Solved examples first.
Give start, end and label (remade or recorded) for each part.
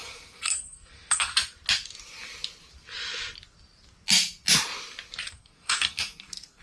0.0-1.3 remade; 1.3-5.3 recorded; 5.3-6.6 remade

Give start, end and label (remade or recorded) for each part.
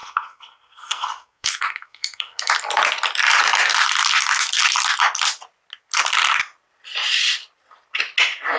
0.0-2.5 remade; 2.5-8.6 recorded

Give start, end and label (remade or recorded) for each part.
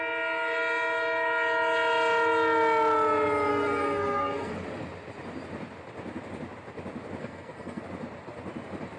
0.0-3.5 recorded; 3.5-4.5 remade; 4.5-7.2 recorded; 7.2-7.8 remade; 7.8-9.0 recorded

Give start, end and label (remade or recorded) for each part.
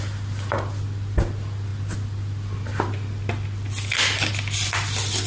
0.0-5.3 recorded